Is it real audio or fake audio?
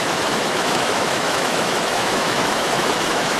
fake